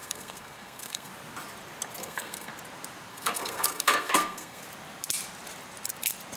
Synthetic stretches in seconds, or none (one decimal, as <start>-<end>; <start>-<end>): 0.0-1.1; 2.0-2.5; 3.1-4.6